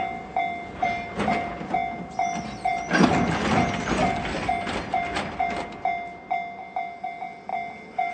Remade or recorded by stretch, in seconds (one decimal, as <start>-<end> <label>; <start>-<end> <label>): 0.0-8.1 recorded